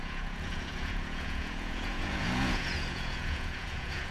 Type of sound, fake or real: fake